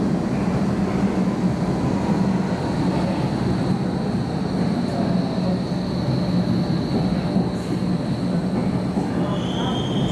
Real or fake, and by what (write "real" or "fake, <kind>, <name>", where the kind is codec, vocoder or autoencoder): real